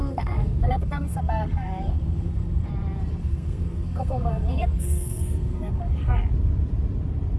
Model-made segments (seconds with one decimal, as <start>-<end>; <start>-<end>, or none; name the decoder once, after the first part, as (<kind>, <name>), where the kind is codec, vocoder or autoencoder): 0.0-2.7 (codec, SNAC); 3.2-6.2

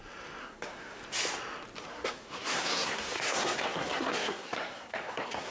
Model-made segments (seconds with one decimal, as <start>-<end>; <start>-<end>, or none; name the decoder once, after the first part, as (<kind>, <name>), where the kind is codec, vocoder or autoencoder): 0.4-1.0 (codec, SNAC); 1.9-5.5

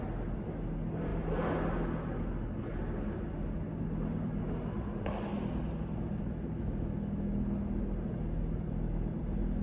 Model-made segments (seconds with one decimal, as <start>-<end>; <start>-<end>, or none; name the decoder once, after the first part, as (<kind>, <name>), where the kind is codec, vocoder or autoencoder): none

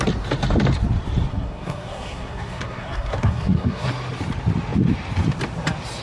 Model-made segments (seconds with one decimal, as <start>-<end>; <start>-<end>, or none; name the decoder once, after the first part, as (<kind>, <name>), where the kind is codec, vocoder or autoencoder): 1.3-3.9 (codec, SNAC)

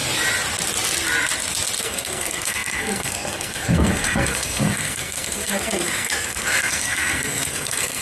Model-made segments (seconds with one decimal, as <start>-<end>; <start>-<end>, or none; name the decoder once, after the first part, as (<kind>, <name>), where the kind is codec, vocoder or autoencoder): 1.8-8.0 (codec, SNAC)